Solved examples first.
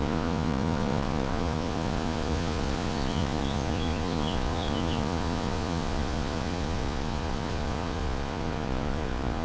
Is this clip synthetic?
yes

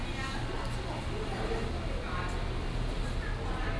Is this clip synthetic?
no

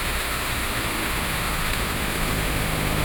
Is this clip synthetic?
yes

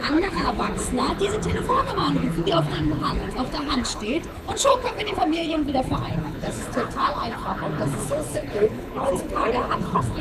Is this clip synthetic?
yes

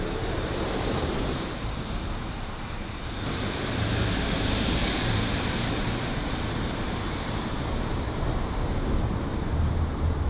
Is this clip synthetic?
yes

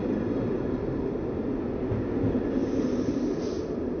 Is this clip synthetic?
no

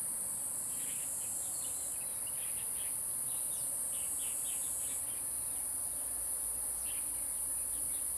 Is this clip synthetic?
no